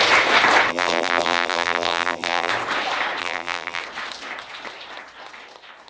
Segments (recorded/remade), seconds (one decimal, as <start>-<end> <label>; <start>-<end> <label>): 0.0-0.7 recorded; 0.7-2.5 remade; 2.5-3.2 recorded; 3.2-3.8 remade; 3.8-5.9 recorded